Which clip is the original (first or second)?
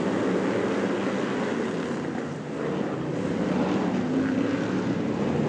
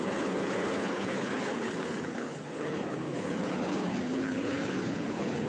first